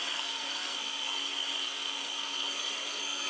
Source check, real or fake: fake